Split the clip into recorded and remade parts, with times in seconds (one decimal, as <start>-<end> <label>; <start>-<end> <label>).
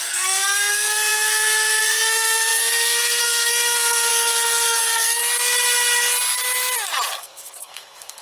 0.0-5.2 remade; 5.2-7.2 recorded; 7.2-8.2 remade